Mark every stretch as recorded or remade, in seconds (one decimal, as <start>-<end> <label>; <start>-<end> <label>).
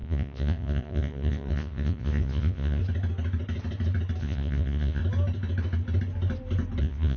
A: 0.0-2.8 remade; 2.8-4.2 recorded; 4.2-5.0 remade; 5.0-6.8 recorded; 6.8-7.2 remade